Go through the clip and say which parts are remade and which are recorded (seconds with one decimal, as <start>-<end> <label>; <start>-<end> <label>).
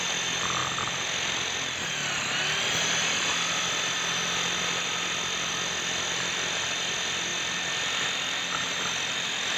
0.0-9.6 recorded